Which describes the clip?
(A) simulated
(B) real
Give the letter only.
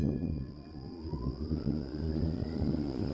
A